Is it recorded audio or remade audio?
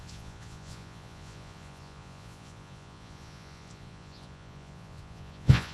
remade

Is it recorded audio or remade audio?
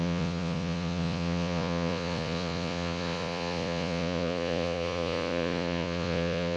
remade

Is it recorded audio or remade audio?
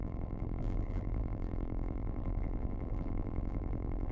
remade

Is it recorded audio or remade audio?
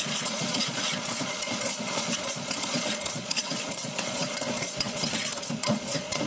remade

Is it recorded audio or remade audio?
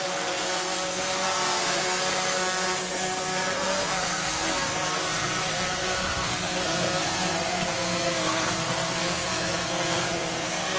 remade